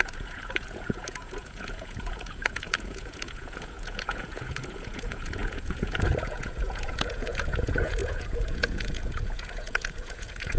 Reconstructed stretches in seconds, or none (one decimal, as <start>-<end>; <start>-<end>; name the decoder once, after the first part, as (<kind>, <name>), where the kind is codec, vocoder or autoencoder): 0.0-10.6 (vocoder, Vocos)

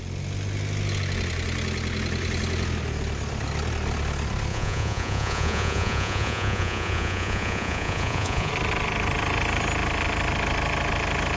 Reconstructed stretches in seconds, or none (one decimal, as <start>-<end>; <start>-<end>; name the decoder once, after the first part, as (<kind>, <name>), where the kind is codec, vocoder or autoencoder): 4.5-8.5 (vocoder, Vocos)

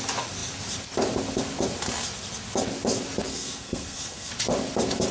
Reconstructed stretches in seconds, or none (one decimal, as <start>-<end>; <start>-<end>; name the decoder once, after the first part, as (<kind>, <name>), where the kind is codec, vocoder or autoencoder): 3.3-4.3 (codec, SNAC)

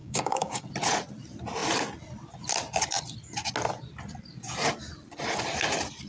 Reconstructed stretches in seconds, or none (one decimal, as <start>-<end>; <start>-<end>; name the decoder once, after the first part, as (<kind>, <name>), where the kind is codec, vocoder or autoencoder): 0.0-0.6 (codec, DAC)

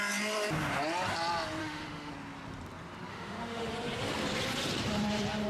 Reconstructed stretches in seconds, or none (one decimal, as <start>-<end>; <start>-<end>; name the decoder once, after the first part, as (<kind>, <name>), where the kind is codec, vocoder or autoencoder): 1.6-2.1 (autoencoder, DAC-VAE); 3.1-3.7

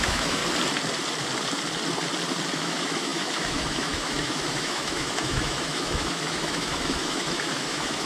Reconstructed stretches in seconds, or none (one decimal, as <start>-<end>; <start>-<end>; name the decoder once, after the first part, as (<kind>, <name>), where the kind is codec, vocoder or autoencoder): 0.0-0.4 (autoencoder, DAC-VAE); 2.5-8.1

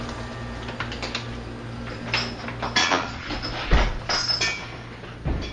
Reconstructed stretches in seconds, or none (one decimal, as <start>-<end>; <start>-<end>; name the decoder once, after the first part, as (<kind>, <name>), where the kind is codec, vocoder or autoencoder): 2.8-3.3 (vocoder, Vocos)

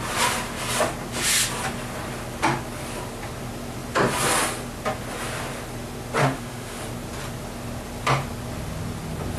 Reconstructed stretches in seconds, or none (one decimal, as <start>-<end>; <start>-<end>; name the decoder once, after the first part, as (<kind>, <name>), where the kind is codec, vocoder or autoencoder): 6.2-6.8 (autoencoder, DAC-VAE)